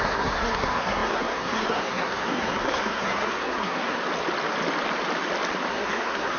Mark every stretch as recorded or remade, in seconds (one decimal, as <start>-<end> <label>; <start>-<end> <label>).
0.0-4.0 remade; 4.0-5.7 recorded; 5.7-6.4 remade